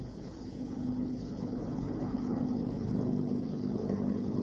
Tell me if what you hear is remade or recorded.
remade